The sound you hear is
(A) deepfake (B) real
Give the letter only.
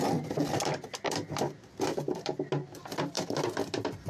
B